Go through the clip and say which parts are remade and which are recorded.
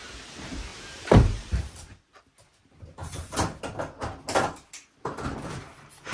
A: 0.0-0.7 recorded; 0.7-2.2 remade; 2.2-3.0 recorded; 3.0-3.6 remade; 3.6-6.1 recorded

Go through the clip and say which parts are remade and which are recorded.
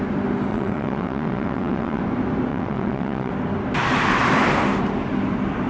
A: 0.0-0.5 recorded; 0.5-2.0 remade; 2.0-2.5 recorded; 2.5-3.3 remade; 3.3-5.7 recorded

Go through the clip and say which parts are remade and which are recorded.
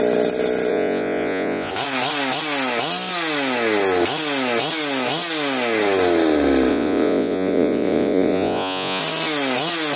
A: 0.0-0.7 recorded; 0.7-1.7 remade; 1.7-6.7 recorded; 6.7-9.0 remade; 9.0-10.0 recorded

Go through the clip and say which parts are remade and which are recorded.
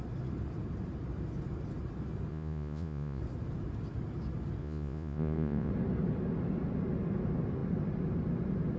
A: 0.0-2.3 recorded; 2.3-3.2 remade; 3.2-4.6 recorded; 4.6-5.7 remade; 5.7-8.8 recorded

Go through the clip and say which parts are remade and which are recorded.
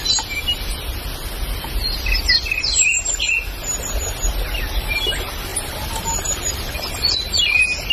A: 0.0-5.5 recorded; 5.5-7.9 remade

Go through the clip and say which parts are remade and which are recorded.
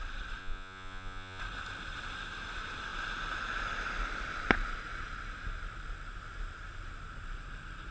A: 0.0-0.4 recorded; 0.4-1.4 remade; 1.4-7.9 recorded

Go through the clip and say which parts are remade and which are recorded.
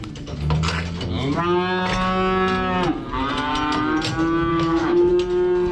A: 0.0-4.5 recorded; 4.5-5.1 remade; 5.1-5.7 recorded